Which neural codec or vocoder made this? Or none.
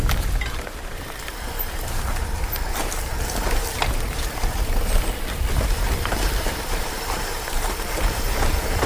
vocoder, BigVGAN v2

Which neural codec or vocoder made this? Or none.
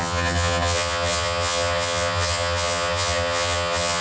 vocoder, HiFi-GAN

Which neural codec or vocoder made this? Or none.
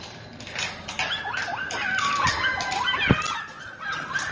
none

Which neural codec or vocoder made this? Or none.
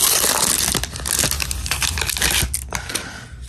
none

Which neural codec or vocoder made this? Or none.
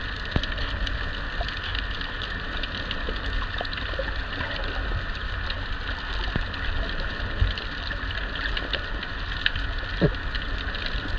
none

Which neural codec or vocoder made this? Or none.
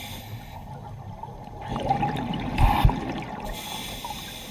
none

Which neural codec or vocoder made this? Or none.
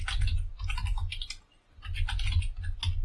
none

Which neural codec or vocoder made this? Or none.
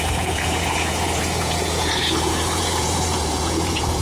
vocoder, Vocos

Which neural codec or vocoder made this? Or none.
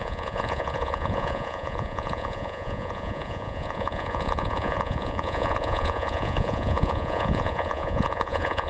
vocoder, Vocos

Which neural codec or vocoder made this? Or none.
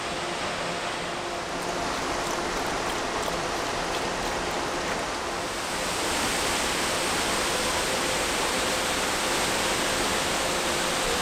none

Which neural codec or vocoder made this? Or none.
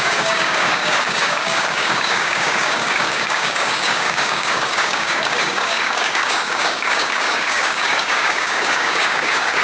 codec, DAC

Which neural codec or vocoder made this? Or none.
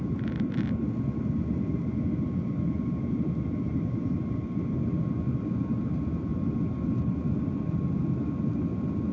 none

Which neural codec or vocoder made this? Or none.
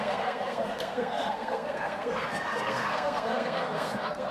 codec, SNAC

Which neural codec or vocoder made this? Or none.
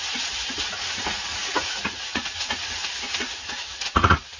vocoder, Vocos